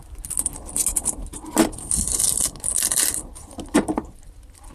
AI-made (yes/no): no